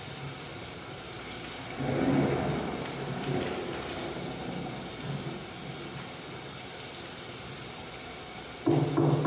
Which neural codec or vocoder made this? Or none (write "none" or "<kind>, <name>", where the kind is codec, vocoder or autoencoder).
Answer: none